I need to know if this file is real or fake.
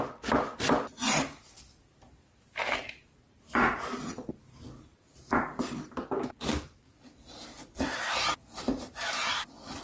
real